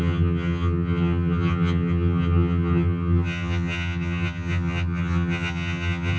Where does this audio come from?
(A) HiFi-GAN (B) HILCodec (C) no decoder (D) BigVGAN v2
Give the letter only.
A